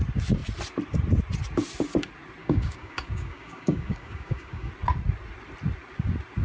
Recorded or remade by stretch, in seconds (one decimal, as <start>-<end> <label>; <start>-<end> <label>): 0.0-2.4 recorded; 2.4-4.7 remade; 4.7-6.4 recorded